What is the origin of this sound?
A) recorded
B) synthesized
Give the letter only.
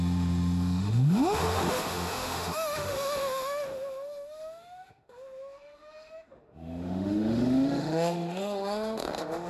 B